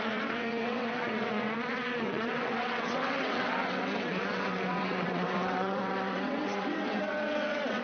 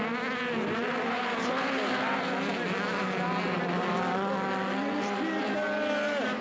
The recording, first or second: second